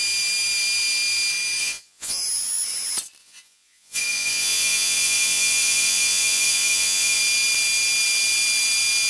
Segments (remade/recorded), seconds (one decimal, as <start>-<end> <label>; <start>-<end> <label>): 0.0-1.6 recorded; 1.6-2.2 remade; 2.2-3.2 recorded; 3.2-7.2 remade; 7.2-9.1 recorded